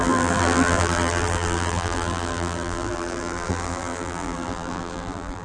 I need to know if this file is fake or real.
fake